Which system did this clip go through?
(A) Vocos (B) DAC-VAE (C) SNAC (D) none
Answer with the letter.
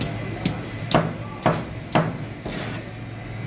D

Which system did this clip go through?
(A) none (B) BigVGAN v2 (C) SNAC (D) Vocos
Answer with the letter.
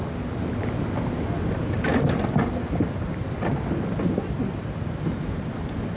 A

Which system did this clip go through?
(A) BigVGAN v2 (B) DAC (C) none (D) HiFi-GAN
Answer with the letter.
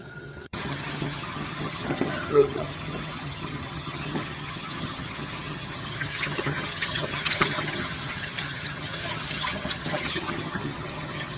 D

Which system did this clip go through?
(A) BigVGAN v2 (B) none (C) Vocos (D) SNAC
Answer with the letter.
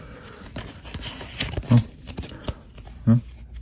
B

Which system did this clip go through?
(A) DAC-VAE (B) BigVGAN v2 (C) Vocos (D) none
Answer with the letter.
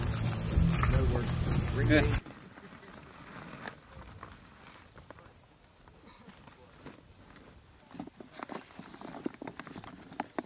D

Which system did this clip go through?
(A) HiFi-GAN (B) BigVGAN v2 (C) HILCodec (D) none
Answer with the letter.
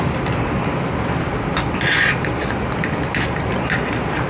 D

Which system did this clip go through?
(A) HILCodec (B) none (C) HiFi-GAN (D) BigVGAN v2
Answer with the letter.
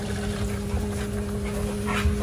B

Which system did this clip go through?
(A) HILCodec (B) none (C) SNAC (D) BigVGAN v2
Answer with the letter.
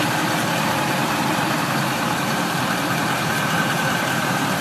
D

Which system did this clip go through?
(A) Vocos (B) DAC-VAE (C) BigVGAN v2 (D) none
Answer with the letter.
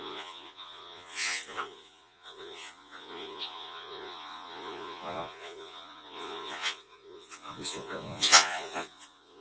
A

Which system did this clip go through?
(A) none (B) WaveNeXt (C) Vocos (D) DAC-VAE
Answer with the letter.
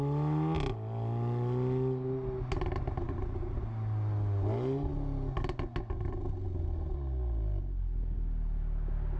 A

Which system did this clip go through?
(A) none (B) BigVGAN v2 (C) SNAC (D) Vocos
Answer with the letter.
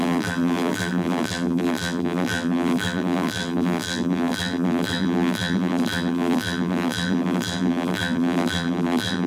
B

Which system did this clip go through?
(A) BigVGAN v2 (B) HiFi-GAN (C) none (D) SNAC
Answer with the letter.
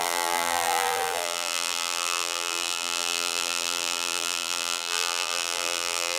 A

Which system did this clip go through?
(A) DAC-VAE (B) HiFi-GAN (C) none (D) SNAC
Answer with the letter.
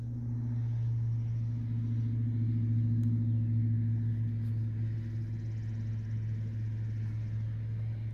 C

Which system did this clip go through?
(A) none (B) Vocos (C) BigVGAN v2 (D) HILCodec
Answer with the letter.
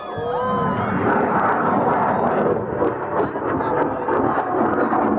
A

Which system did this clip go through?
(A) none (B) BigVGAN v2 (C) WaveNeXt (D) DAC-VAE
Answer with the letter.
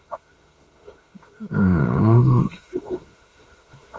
D